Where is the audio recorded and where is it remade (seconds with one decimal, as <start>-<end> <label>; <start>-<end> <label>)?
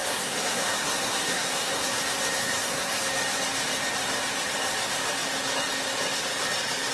0.0-2.0 remade; 2.0-2.4 recorded; 2.4-3.0 remade; 3.0-6.9 recorded